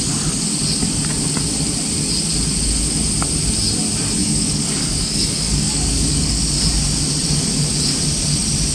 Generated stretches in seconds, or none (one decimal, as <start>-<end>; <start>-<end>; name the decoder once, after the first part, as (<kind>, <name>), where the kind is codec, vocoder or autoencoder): 4.2-6.4 (codec, DAC)